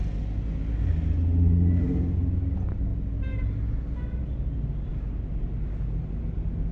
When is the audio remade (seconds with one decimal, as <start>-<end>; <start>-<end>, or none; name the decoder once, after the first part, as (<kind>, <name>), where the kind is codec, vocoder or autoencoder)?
none